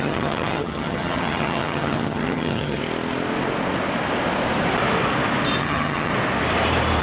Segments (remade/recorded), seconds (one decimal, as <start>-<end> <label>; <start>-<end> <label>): 0.0-2.8 remade; 2.8-5.6 recorded; 5.6-6.1 remade; 6.1-7.0 recorded